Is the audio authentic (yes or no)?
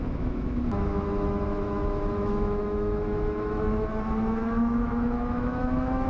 no